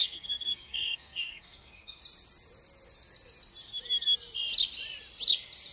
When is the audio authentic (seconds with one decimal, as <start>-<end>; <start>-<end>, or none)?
2.0-5.7